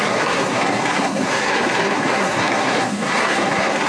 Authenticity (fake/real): fake